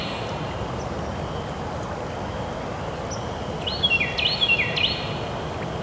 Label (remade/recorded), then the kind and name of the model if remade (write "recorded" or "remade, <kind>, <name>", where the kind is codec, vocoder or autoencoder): recorded